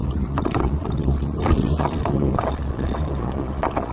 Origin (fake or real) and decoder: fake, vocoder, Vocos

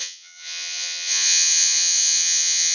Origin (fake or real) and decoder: fake, vocoder, Vocos